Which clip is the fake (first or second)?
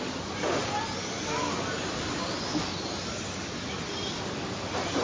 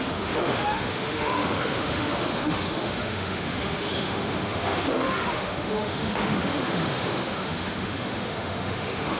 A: second